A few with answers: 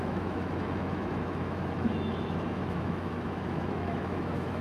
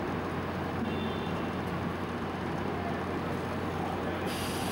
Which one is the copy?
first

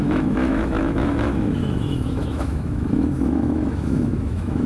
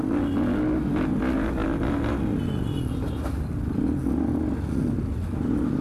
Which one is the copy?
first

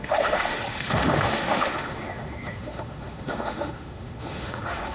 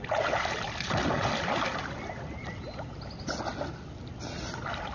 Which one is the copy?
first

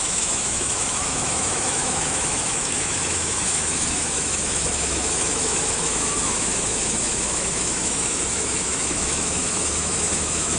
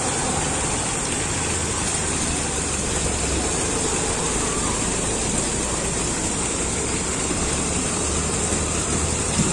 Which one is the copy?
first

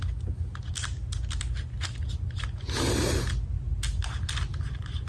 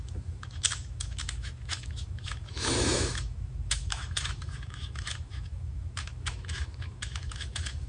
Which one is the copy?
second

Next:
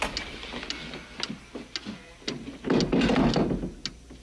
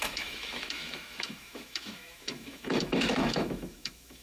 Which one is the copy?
second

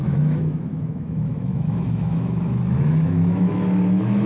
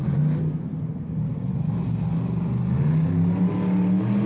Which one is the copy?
first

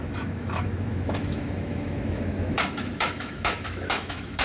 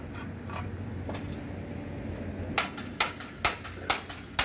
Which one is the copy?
first